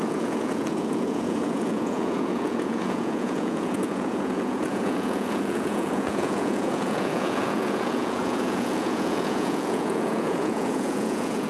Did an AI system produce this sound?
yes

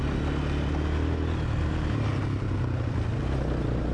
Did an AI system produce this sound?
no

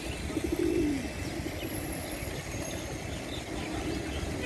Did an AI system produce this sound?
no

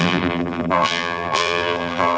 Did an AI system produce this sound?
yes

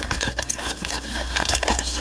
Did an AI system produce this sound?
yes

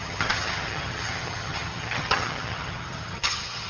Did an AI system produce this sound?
yes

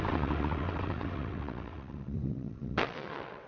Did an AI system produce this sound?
yes